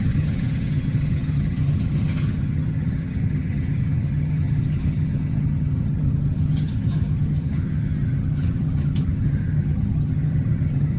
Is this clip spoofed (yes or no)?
yes